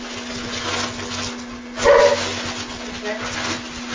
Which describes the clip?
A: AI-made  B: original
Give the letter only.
B